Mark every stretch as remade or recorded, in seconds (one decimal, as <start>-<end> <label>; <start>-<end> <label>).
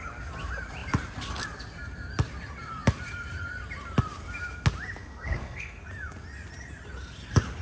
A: 0.0-5.0 recorded; 5.0-5.8 remade; 5.8-7.6 recorded